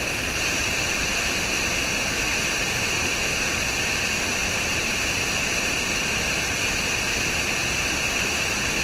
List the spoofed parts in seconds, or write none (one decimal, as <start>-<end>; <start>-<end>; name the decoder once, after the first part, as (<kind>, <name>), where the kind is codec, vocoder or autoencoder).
none